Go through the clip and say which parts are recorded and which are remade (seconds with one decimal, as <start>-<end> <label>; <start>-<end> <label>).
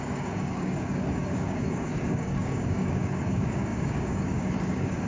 0.0-5.1 remade